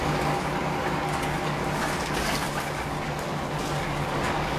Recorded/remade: remade